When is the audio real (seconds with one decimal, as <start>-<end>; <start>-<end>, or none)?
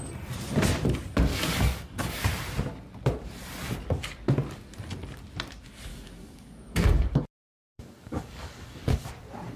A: 0.0-1.3; 2.2-5.9; 9.1-9.6